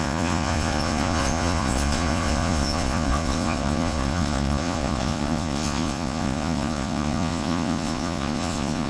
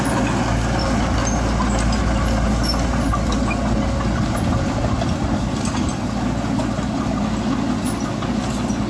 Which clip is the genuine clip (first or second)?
second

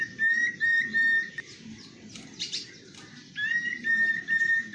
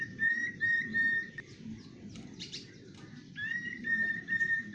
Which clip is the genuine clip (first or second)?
first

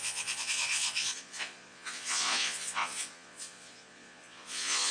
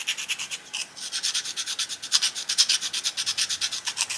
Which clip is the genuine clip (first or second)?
second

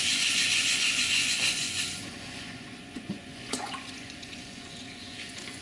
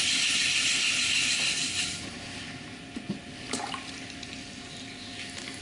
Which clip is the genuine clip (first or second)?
second